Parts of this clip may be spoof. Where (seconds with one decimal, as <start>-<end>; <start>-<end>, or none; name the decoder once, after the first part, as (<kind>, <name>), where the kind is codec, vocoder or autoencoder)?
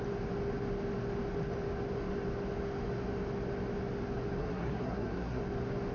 4.4-5.4 (codec, SNAC)